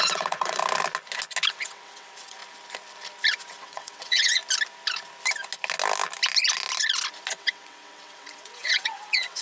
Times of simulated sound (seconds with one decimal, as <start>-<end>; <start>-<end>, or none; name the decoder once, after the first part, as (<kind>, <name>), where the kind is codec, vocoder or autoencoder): 0.0-0.6 (vocoder, WaveNeXt); 1.5-2.4; 3.6-4.4; 7.3-9.4